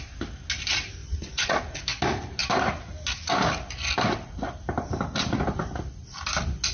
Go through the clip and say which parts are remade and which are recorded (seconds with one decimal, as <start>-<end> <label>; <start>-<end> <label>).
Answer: 0.0-1.0 recorded; 1.0-1.6 remade; 1.6-6.7 recorded